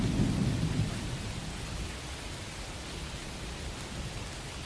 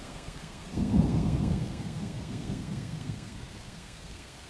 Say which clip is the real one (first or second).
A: first